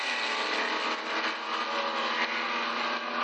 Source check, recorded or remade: recorded